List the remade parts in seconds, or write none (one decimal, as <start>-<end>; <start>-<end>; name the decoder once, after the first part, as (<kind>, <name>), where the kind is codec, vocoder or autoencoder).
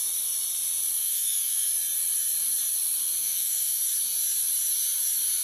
1.0-1.7 (autoencoder, DAC-VAE); 3.2-3.8